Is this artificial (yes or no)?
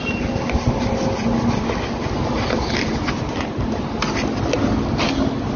no